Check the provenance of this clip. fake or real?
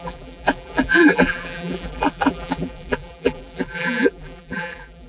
fake